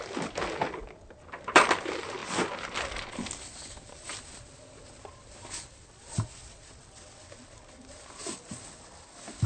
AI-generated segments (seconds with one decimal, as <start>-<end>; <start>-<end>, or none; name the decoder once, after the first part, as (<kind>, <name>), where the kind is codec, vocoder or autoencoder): none